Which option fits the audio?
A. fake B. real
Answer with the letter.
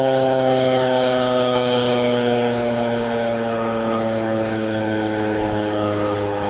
A